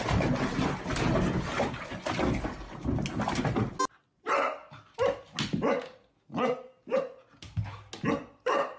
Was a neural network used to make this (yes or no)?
no